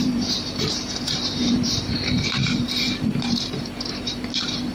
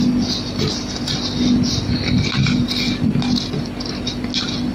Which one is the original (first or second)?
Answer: second